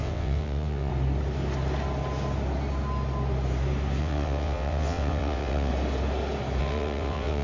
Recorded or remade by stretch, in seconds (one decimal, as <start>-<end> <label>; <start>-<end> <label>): 0.0-0.9 remade; 0.9-4.0 recorded; 4.0-5.7 remade; 5.7-6.6 recorded; 6.6-7.4 remade